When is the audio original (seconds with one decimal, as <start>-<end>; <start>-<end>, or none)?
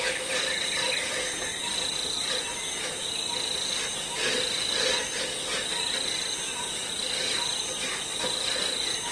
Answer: 0.0-9.1